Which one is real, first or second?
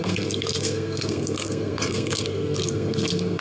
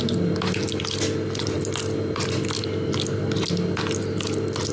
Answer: second